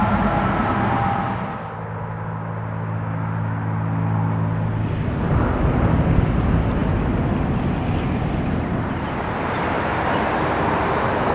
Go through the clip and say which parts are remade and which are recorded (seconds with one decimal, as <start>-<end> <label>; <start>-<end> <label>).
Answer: 0.0-11.3 recorded